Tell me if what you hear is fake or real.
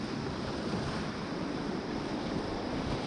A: fake